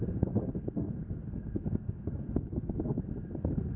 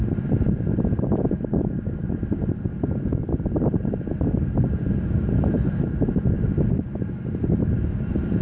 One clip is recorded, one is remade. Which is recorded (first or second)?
second